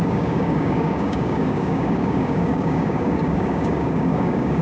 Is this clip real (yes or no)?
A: no